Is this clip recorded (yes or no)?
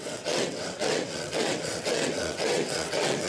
no